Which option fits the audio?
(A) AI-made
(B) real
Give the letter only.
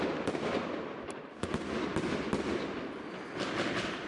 A